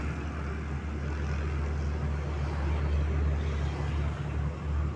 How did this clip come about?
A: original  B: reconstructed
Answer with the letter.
A